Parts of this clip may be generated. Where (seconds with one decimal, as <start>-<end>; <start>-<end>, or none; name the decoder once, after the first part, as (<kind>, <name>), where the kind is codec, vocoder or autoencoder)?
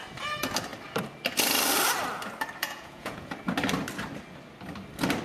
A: 2.6-3.3 (vocoder, Vocos)